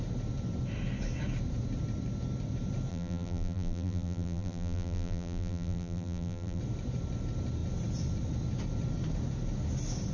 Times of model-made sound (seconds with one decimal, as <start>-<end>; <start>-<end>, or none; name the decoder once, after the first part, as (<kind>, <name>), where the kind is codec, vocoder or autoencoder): 2.9-6.6 (vocoder, BigVGAN v2)